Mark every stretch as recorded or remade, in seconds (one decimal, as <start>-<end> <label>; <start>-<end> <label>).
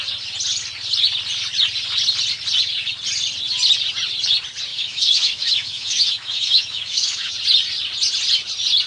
0.0-4.7 recorded; 4.7-7.3 remade; 7.3-8.9 recorded